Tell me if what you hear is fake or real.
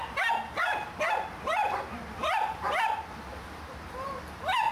real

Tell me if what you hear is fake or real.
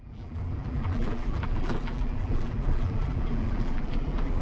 fake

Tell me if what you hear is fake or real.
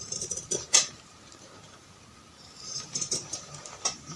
fake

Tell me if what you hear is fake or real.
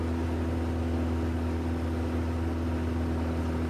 real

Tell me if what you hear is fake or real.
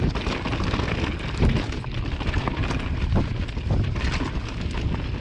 real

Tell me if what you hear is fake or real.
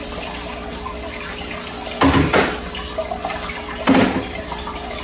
real